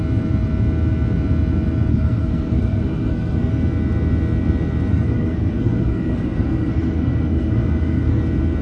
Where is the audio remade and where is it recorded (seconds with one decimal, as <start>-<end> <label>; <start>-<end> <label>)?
0.0-1.9 recorded; 1.9-3.5 remade; 3.5-4.9 recorded; 4.9-8.2 remade; 8.2-8.6 recorded